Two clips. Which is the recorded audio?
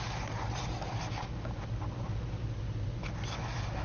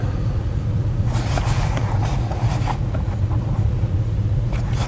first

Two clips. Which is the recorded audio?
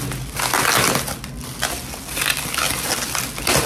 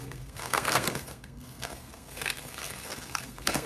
first